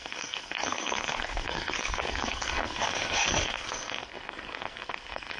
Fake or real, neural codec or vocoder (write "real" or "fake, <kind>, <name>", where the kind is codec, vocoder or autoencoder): fake, codec, SNAC